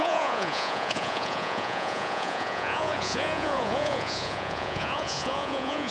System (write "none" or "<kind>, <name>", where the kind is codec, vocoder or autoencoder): vocoder, Vocos